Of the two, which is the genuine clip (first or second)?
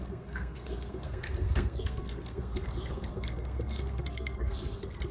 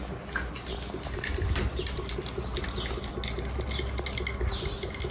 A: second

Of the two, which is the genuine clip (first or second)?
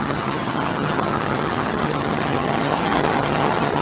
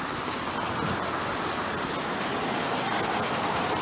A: second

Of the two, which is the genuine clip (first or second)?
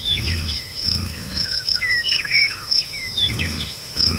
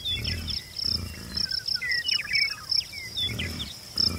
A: second